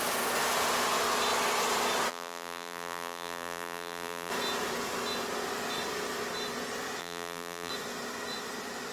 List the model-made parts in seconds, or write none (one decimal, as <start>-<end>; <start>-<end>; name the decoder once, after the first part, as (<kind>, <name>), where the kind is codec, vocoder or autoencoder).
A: 2.1-4.3 (vocoder, BigVGAN v2); 7.0-7.7

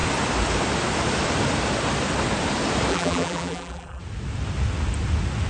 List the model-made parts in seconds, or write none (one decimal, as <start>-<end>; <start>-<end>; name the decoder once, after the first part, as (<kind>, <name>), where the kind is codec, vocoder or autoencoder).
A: 2.9-4.0 (vocoder, BigVGAN v2)